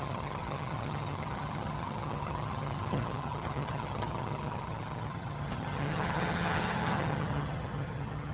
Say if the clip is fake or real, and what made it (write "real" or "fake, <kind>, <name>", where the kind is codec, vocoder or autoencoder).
fake, vocoder, HiFi-GAN